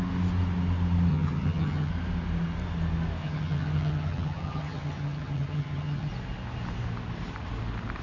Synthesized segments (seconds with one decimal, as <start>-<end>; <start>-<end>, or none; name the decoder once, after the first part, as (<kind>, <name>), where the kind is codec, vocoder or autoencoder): 1.1-1.9 (vocoder, HiFi-GAN); 3.2-6.1